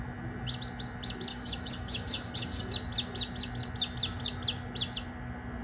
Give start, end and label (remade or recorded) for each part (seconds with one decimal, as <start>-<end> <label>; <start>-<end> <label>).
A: 0.0-1.3 recorded; 1.3-2.7 remade; 2.7-5.6 recorded